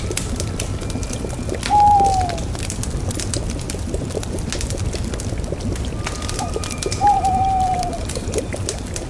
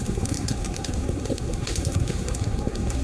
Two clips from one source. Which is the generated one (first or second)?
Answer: second